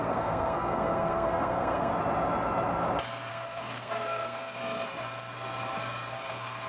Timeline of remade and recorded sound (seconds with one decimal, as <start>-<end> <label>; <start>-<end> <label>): 0.0-1.9 remade; 1.9-3.3 recorded; 3.3-4.6 remade; 4.6-6.3 recorded; 6.3-6.7 remade